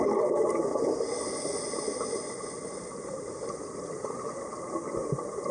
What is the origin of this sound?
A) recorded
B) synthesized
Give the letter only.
A